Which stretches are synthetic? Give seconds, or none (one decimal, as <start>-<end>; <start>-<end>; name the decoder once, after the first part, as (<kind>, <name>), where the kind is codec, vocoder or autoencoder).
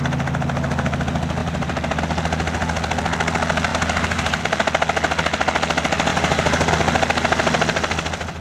1.4-2.0 (vocoder, BigVGAN v2); 3.7-4.4; 6.1-6.7